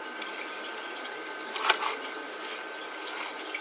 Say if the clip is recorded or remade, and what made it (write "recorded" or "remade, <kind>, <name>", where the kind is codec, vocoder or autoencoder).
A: recorded